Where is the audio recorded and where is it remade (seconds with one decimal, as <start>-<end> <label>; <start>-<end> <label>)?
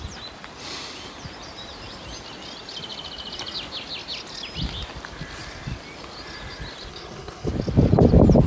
0.0-6.9 recorded; 6.9-7.5 remade; 7.5-8.5 recorded